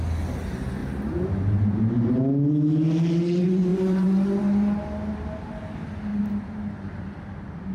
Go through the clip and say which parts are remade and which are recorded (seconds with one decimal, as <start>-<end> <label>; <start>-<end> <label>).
0.0-0.8 recorded; 0.8-2.2 remade; 2.2-3.7 recorded; 3.7-4.4 remade; 4.4-6.1 recorded; 6.1-7.1 remade; 7.1-7.7 recorded